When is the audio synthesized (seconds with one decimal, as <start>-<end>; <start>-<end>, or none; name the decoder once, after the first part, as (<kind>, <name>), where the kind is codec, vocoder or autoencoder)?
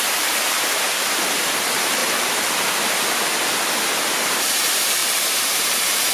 0.0-2.0 (vocoder, BigVGAN v2); 4.1-6.1